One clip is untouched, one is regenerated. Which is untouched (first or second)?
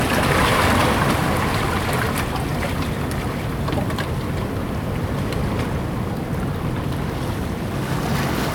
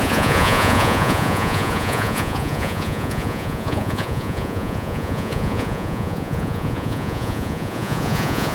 first